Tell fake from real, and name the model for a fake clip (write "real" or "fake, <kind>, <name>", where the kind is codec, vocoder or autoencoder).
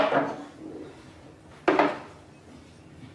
real